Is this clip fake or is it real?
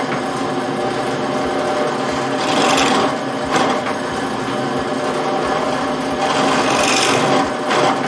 real